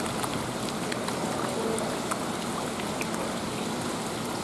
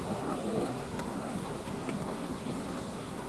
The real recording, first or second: first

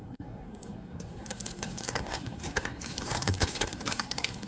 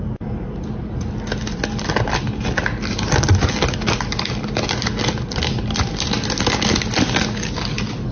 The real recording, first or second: second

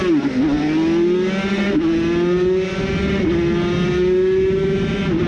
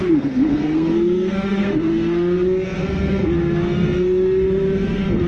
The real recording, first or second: first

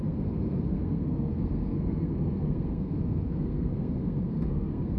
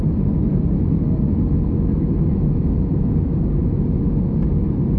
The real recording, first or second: second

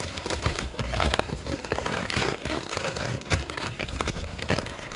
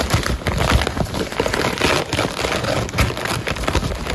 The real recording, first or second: second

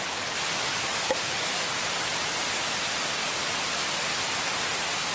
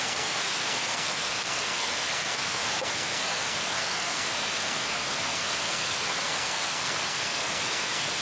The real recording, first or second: first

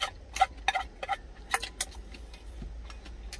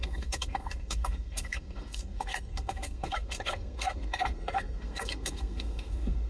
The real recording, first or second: first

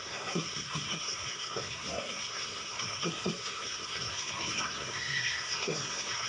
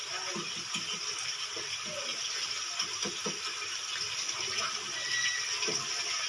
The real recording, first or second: second